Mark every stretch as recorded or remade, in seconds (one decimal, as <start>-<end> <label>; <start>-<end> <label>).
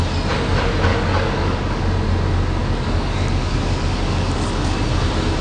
0.0-0.9 recorded; 0.9-1.8 remade; 1.8-2.6 recorded; 2.6-4.8 remade; 4.8-5.4 recorded